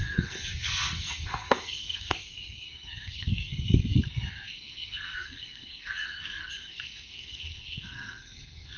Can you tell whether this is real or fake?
fake